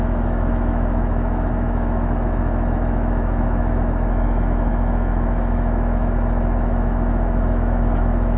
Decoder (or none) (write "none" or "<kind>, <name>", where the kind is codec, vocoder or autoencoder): autoencoder, DAC-VAE